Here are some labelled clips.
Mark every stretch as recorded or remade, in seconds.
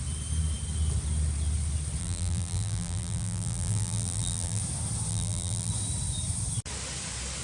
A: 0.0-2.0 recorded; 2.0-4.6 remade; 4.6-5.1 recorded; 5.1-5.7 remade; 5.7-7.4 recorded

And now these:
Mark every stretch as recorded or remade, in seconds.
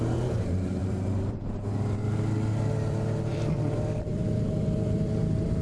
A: 0.0-0.8 recorded; 0.8-1.7 remade; 1.7-3.3 recorded; 3.3-5.6 remade